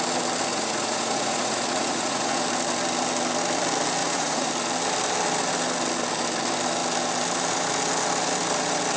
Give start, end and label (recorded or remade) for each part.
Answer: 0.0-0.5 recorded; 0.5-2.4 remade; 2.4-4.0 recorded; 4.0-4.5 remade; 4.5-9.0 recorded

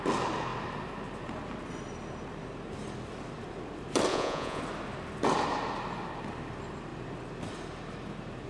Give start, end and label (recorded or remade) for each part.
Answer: 0.0-4.1 recorded; 4.1-4.6 remade; 4.6-8.5 recorded